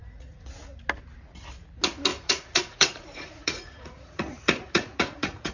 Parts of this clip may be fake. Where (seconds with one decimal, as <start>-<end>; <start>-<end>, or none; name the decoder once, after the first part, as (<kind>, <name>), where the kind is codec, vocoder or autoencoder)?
0.0-0.5 (vocoder, Vocos); 2.1-5.5

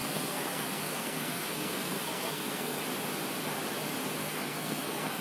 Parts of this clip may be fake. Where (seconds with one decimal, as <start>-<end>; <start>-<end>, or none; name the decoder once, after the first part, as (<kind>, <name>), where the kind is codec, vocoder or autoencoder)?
0.0-2.8 (codec, SNAC); 4.2-5.2